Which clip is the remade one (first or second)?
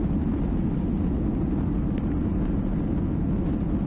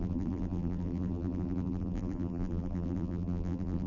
second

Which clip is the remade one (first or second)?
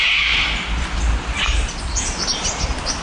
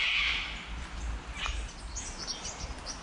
first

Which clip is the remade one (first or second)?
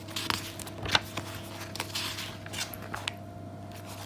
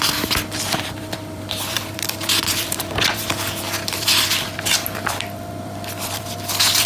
second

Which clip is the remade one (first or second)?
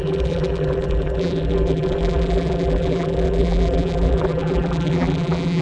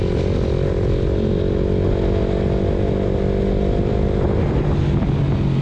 first